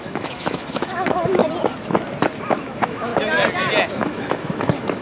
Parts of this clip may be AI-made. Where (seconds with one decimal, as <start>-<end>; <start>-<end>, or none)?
0.0-1.4; 2.5-3.1; 3.9-5.0